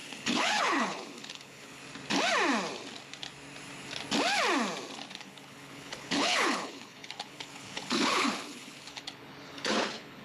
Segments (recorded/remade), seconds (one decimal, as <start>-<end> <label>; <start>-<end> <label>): 0.0-1.8 remade; 1.8-5.1 recorded; 5.1-10.2 remade